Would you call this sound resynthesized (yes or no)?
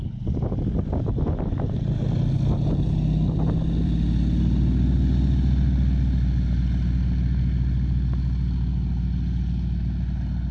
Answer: no